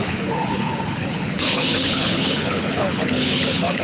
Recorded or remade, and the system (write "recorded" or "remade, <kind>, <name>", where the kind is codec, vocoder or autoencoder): remade, codec, HILCodec